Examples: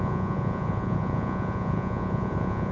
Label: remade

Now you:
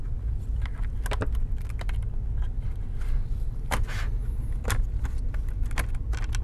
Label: recorded